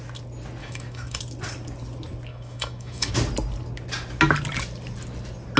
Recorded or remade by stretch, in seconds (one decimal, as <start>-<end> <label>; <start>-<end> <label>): 0.0-0.6 recorded; 0.6-1.2 remade; 1.2-2.3 recorded; 2.3-3.1 remade; 3.1-5.6 recorded

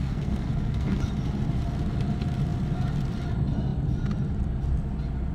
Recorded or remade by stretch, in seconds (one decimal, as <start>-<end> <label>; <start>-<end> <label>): 0.0-1.1 remade; 1.1-5.3 recorded

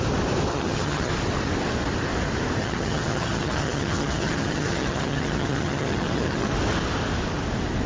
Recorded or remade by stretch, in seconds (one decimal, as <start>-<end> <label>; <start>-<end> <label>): 0.0-0.5 recorded; 0.5-1.1 remade; 1.1-2.6 recorded; 2.6-6.5 remade; 6.5-7.9 recorded

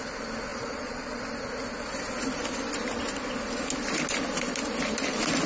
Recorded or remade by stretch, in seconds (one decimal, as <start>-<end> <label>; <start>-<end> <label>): 0.0-0.5 recorded; 0.5-1.2 remade; 1.2-5.5 recorded

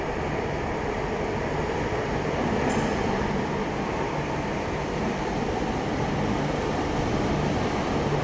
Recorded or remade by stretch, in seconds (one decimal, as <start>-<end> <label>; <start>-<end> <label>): 0.0-8.2 recorded